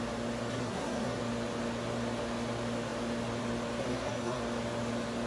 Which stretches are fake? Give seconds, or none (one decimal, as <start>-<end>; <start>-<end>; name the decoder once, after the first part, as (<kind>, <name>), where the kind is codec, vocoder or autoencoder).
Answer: 0.5-1.2 (codec, SNAC); 3.8-4.4